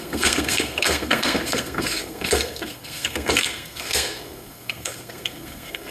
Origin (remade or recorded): remade